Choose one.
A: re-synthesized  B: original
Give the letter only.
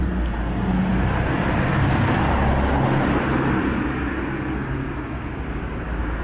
B